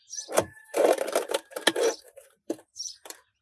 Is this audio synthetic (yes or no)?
yes